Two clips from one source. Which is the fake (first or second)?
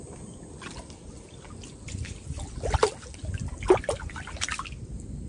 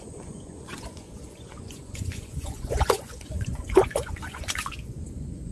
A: second